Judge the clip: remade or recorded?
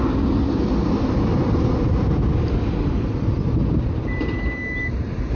recorded